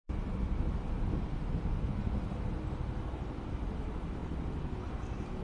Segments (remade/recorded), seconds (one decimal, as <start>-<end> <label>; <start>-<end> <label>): 0.0-5.4 recorded